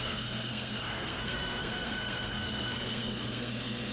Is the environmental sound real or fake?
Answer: fake